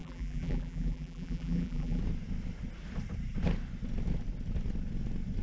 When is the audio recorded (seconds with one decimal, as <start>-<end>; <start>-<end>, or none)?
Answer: 2.0-5.4